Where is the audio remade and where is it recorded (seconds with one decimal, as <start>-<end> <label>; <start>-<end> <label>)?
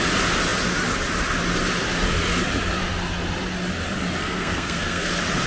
0.0-4.2 recorded; 4.2-5.1 remade; 5.1-5.5 recorded